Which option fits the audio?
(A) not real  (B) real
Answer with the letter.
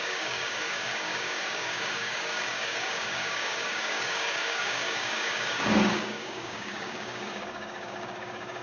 A